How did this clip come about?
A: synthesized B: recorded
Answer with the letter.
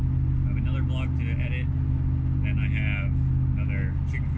B